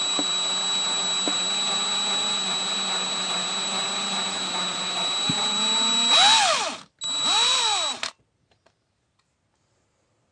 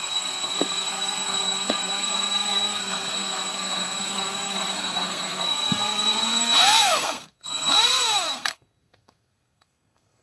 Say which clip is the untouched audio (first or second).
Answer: first